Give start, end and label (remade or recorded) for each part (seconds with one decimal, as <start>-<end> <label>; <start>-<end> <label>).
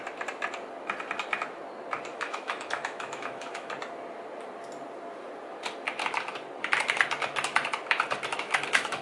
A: 0.0-2.1 recorded; 2.1-3.7 remade; 3.7-8.3 recorded; 8.3-9.0 remade